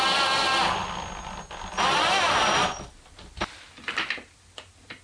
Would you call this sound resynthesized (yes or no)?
no